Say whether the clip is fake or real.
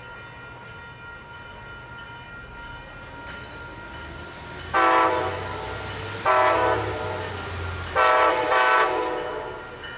real